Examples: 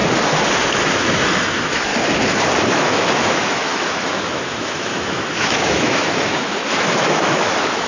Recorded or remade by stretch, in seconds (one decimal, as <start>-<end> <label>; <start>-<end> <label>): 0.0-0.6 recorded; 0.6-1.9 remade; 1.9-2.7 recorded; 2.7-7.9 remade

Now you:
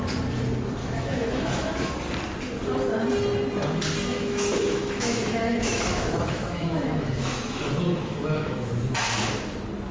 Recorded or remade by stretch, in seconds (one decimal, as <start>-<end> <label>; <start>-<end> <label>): 0.0-0.8 recorded; 0.8-1.9 remade; 1.9-4.1 recorded; 4.1-8.7 remade; 8.7-9.9 recorded

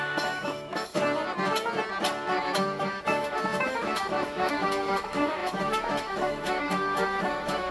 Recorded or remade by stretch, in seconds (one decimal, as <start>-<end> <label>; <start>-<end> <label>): 0.0-1.0 remade; 1.0-2.4 recorded; 2.4-7.7 remade

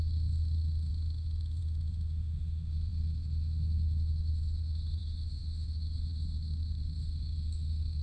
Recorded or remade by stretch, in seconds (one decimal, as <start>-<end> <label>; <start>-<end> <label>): 0.0-8.0 remade